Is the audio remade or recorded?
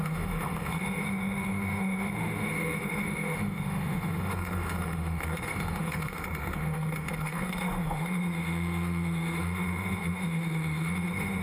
remade